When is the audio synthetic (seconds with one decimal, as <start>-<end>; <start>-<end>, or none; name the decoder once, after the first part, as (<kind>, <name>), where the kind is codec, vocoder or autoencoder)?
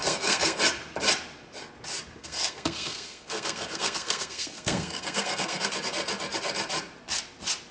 0.0-0.6 (codec, SNAC); 2.2-5.7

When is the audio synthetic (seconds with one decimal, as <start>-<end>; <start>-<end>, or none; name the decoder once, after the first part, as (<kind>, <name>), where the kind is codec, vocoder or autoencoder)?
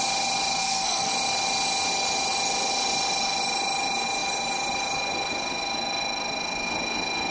0.6-1.1 (codec, SNAC)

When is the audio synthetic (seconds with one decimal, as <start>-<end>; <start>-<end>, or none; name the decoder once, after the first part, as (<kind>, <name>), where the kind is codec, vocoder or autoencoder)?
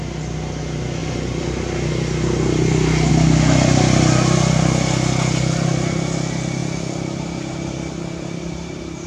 none